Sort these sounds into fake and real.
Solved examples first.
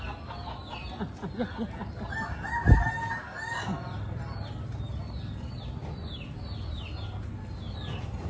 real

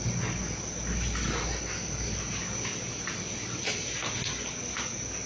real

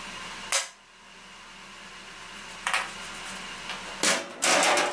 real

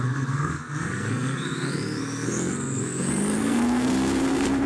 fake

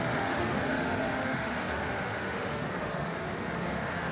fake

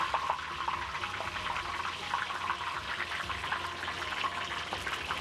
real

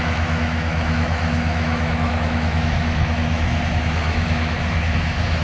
fake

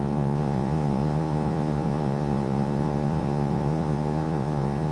fake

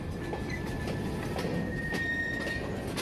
real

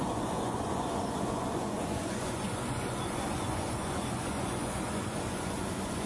fake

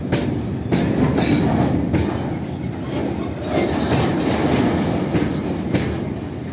real